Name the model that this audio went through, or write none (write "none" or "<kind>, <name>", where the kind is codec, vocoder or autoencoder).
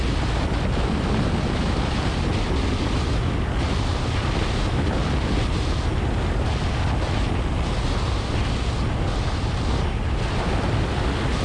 none